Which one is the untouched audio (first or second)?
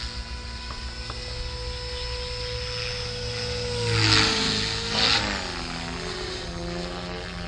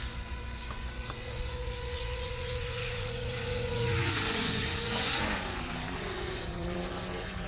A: first